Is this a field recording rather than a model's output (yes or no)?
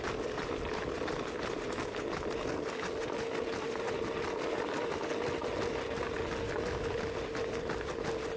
yes